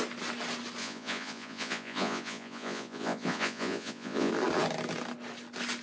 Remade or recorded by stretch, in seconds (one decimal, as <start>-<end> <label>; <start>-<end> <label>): 0.0-0.8 recorded; 0.8-4.3 remade; 4.3-5.8 recorded